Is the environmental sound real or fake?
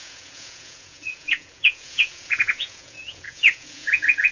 fake